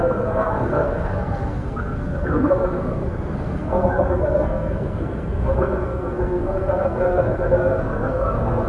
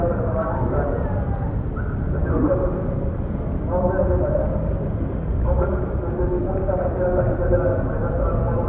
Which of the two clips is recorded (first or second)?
second